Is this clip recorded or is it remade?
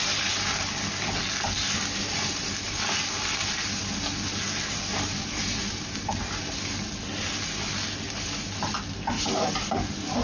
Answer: recorded